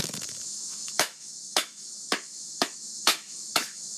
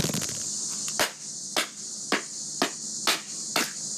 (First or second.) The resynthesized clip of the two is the first